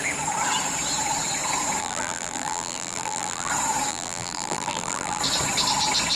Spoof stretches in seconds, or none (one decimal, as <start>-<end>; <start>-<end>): 1.8-3.5; 3.9-5.2